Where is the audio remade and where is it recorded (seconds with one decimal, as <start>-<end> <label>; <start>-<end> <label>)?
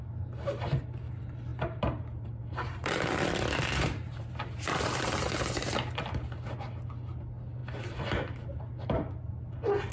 0.0-1.5 recorded; 1.5-5.0 remade; 5.0-9.9 recorded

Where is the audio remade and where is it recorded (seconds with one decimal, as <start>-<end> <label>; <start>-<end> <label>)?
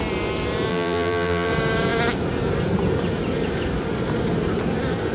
0.0-0.7 recorded; 0.7-1.5 remade; 1.5-5.1 recorded